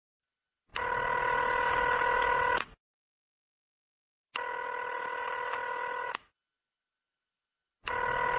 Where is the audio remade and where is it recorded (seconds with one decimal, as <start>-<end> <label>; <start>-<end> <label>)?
0.0-8.4 recorded